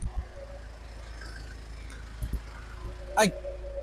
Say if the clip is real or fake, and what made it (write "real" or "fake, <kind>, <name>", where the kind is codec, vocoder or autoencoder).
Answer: real